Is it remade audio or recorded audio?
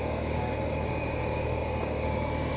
remade